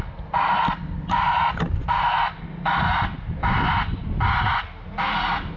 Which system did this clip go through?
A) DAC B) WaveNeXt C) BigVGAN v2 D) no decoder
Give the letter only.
D